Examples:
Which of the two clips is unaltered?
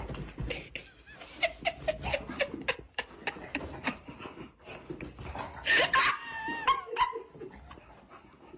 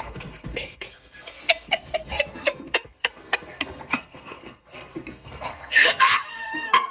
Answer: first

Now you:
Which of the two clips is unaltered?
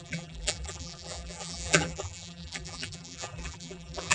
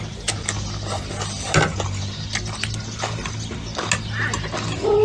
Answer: second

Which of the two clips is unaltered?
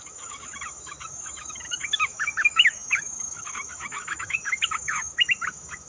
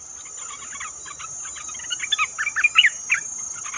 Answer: second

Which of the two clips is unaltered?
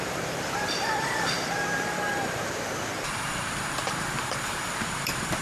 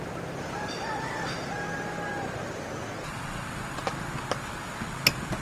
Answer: second